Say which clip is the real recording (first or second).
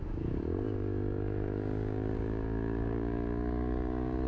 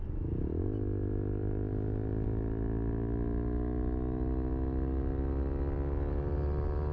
second